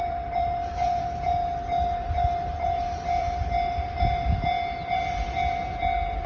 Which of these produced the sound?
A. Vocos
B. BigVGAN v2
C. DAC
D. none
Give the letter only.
B